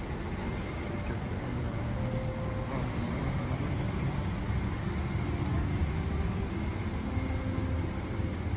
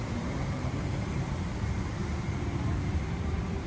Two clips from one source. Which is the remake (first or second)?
second